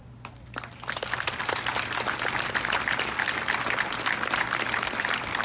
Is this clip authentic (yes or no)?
yes